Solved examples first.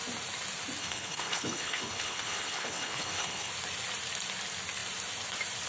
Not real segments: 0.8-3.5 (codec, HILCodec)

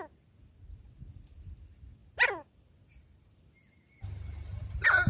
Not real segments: none

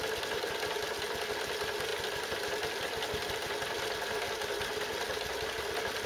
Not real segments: none

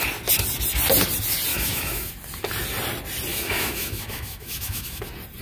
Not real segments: 1.5-2.1 (autoencoder, DAC-VAE); 3.3-5.0